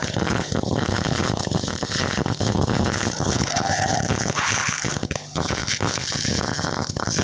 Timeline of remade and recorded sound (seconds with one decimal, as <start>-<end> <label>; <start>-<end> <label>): 0.0-7.2 remade